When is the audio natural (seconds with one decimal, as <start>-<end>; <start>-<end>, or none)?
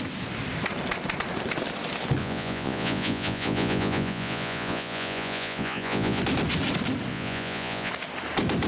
0.0-2.2; 6.2-7.1; 7.9-8.7